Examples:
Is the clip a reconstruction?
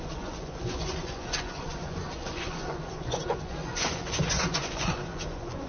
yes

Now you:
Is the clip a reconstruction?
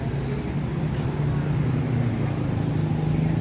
no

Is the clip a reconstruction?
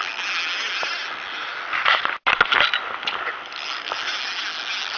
no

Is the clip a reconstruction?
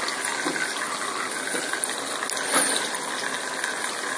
no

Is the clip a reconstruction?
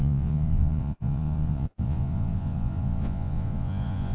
yes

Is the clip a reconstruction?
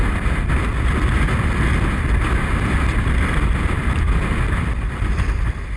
no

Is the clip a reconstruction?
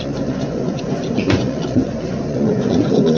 yes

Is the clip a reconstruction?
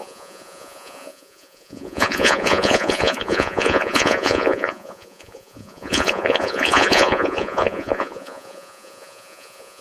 yes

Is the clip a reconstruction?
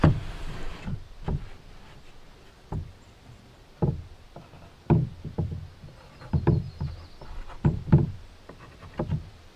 no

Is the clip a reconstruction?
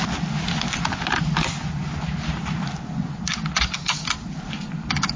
no